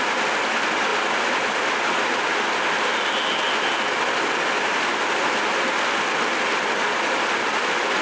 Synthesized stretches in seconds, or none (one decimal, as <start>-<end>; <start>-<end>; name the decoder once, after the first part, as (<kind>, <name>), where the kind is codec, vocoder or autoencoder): none